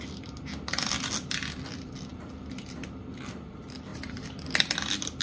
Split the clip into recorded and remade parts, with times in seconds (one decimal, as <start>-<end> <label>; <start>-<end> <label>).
0.0-5.2 recorded